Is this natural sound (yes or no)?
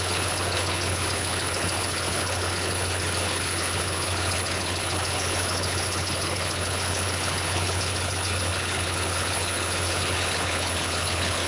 no